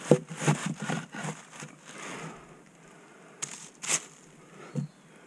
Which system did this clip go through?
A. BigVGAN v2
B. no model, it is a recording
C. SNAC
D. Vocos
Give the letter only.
B